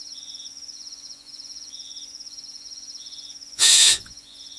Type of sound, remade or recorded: remade